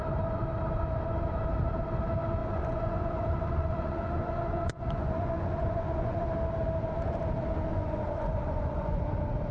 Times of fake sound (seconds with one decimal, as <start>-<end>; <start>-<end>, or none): 2.4-6.3; 7.7-9.0